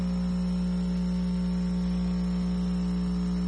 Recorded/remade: recorded